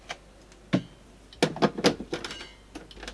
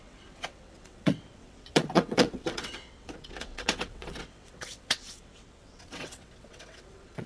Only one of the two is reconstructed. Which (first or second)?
second